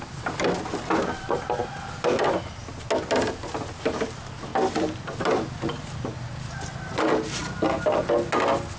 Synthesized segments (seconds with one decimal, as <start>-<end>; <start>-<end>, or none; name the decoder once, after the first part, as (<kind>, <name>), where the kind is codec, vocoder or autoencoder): none